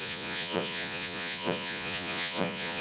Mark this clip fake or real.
fake